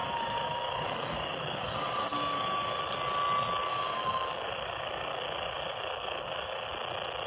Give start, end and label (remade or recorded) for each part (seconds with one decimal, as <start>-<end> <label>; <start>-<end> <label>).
0.0-2.8 remade; 2.8-3.7 recorded; 3.7-6.7 remade; 6.7-7.3 recorded